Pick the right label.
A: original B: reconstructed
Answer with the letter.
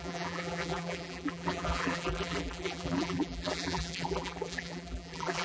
B